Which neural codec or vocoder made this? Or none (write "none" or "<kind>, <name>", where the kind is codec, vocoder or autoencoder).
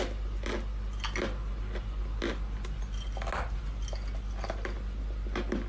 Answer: none